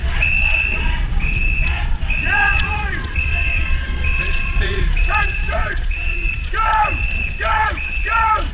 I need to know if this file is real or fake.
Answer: fake